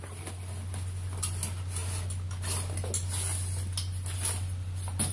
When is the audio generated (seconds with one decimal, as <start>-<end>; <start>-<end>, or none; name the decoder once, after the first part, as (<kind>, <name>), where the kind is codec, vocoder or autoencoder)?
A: none